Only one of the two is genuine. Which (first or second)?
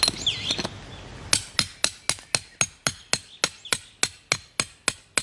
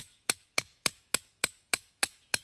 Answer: first